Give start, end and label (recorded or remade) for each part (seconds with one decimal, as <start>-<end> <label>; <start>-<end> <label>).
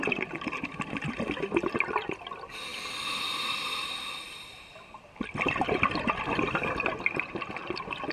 0.0-8.1 recorded